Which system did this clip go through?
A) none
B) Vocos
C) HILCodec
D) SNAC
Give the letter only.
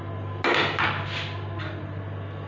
A